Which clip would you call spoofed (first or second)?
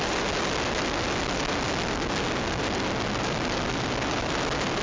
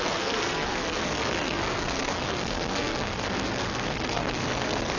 second